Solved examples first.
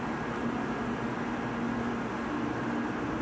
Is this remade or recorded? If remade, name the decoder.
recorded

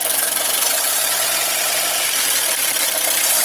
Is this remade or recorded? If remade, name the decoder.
remade, vocoder, BigVGAN v2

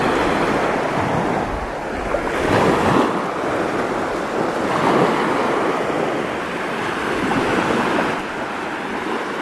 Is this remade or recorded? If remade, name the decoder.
recorded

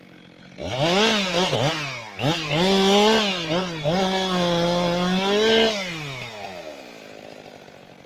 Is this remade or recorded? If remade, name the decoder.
recorded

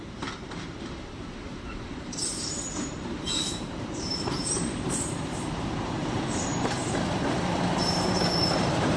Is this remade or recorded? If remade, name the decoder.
remade, vocoder, BigVGAN v2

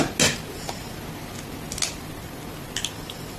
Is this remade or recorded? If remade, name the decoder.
recorded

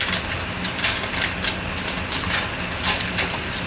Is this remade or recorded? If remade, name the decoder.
recorded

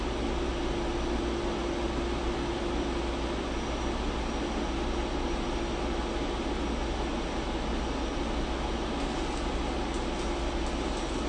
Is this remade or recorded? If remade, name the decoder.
recorded